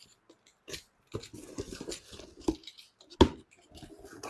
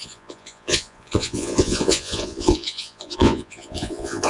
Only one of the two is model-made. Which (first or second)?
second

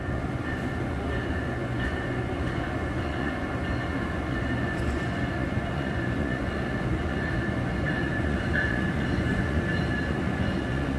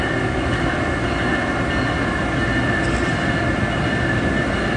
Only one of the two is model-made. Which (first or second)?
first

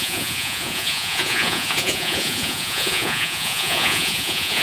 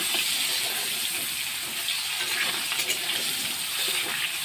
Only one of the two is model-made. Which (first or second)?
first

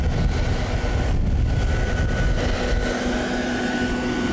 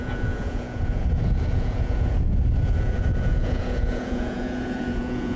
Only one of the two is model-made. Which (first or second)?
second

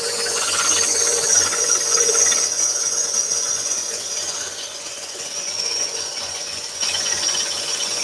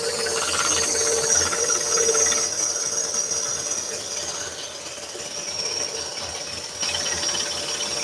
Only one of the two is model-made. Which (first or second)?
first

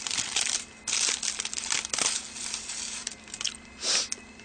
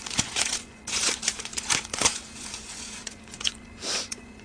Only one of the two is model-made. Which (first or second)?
second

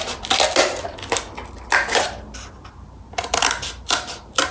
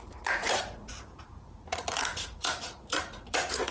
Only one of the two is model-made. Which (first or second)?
second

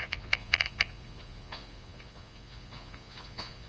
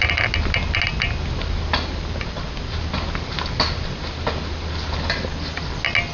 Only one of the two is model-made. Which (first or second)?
first